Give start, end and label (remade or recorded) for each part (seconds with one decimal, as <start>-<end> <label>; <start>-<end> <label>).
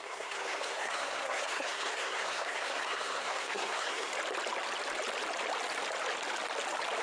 0.0-4.1 remade; 4.1-7.0 recorded